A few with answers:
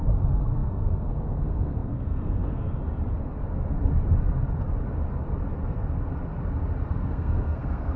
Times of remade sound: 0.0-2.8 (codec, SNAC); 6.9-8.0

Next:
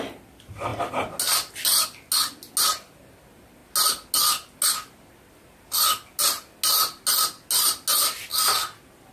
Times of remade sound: none

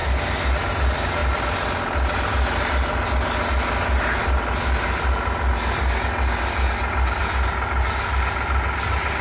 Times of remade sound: none